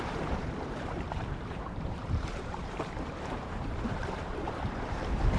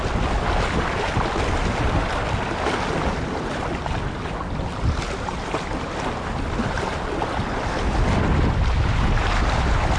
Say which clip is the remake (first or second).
first